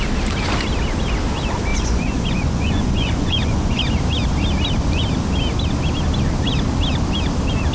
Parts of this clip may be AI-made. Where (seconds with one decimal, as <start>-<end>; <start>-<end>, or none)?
1.7-3.8